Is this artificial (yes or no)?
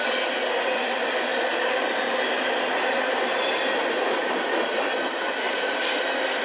no